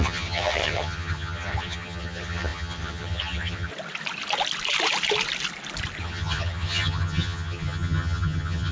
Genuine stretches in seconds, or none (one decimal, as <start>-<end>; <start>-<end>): 3.7-6.0